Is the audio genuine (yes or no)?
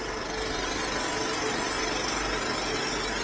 yes